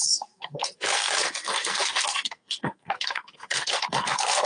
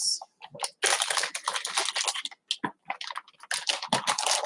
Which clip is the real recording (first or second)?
second